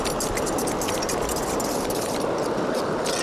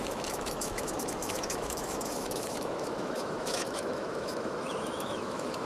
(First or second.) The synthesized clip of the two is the second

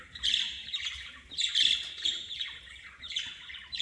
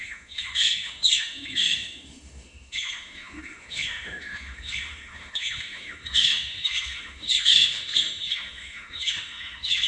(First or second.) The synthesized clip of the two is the second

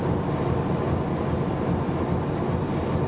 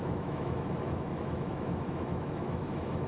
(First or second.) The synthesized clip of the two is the second